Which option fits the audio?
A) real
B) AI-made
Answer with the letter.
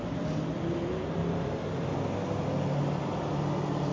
A